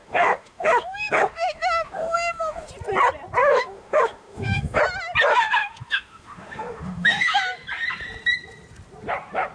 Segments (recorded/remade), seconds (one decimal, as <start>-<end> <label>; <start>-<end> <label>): 0.0-2.7 remade; 2.7-3.4 recorded; 3.4-4.8 remade; 4.8-5.3 recorded; 5.3-7.4 remade; 7.4-9.5 recorded